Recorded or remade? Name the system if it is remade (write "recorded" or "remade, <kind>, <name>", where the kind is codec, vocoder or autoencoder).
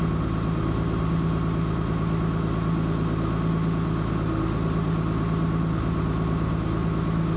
recorded